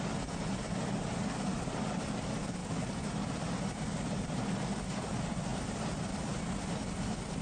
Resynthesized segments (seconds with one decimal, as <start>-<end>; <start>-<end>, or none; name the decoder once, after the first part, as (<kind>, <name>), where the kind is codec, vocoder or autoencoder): 1.5-2.1 (vocoder, BigVGAN v2); 2.6-4.3; 5.5-6.1